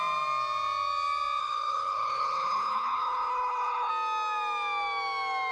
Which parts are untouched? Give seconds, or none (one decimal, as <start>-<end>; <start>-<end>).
0.0-1.4; 3.9-5.5